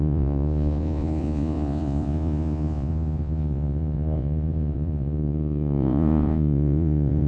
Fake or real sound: fake